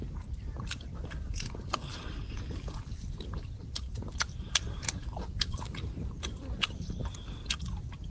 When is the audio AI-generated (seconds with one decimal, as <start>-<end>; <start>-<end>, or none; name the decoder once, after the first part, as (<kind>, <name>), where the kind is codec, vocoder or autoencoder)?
1.9-6.8 (vocoder, BigVGAN v2)